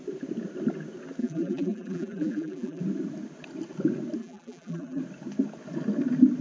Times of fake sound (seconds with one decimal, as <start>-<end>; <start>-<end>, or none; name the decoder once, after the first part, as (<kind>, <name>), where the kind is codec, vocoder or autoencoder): 1.2-2.8 (vocoder, BigVGAN v2); 4.2-5.0